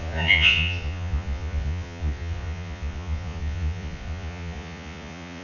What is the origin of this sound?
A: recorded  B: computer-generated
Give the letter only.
B